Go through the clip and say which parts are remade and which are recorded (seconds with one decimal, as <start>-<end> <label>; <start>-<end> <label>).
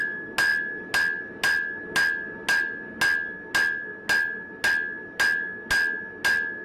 0.0-6.6 recorded